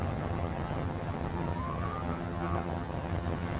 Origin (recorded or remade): remade